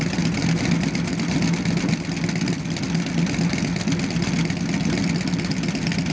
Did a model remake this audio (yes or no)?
no